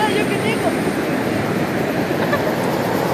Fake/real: real